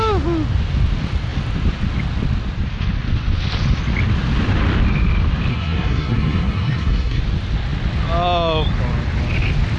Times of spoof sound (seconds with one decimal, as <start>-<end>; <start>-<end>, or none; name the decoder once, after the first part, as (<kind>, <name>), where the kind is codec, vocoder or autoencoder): 5.5-7.2 (codec, SNAC)